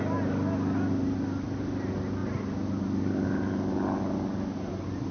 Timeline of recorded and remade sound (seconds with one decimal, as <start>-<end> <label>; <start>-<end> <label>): 0.0-5.1 recorded